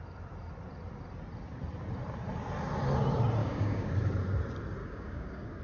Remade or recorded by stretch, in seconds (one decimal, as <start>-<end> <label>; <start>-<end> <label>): 0.0-3.4 recorded; 3.4-3.9 remade; 3.9-4.8 recorded; 4.8-5.6 remade